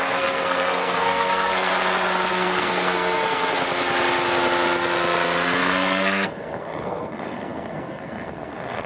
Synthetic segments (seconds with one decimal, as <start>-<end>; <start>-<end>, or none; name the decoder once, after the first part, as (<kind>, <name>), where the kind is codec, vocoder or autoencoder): 0.0-1.7 (codec, SNAC); 2.3-3.4; 5.6-8.9